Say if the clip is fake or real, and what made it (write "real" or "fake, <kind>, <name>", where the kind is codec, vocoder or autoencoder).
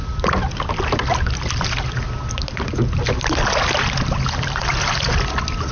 real